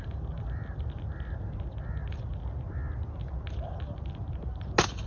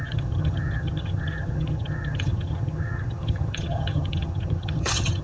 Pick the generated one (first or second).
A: second